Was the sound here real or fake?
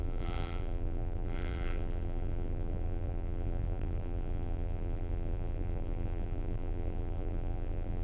fake